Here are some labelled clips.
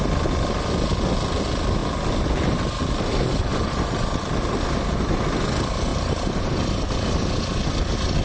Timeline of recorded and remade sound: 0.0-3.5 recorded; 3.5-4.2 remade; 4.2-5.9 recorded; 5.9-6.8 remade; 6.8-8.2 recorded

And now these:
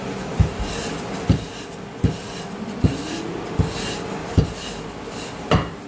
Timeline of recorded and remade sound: 0.0-4.2 recorded; 4.2-5.5 remade; 5.5-5.9 recorded

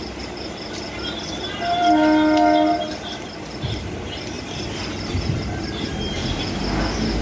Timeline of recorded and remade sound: 0.0-7.2 recorded

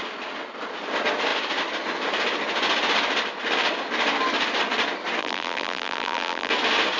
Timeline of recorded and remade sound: 0.0-5.2 recorded; 5.2-6.5 remade; 6.5-7.0 recorded

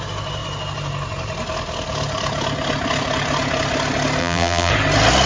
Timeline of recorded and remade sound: 0.0-4.2 recorded; 4.2-4.7 remade; 4.7-5.3 recorded

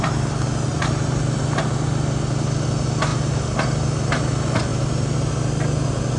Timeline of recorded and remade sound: 0.0-0.7 recorded; 0.7-1.6 remade; 1.6-4.7 recorded; 4.7-5.3 remade; 5.3-6.2 recorded

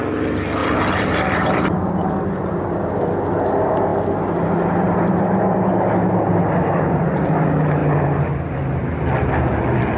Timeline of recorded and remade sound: 0.0-0.6 recorded; 0.6-2.1 remade; 2.1-3.9 recorded; 3.9-5.2 remade; 5.2-10.0 recorded

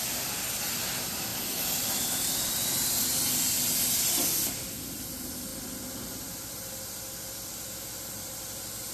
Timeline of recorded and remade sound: 0.0-5.5 remade; 5.5-6.5 recorded; 6.5-8.9 remade